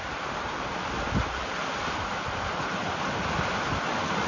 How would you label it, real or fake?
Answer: real